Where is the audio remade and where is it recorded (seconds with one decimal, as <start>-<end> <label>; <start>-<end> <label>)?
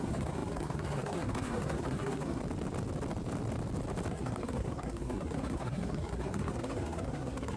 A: 0.0-2.4 remade; 2.4-4.1 recorded; 4.1-7.6 remade